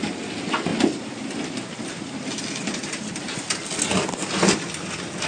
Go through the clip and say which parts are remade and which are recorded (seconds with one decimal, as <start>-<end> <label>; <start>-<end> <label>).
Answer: 0.0-5.3 recorded